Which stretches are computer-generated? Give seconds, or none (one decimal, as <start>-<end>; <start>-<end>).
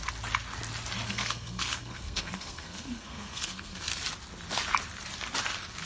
1.1-3.9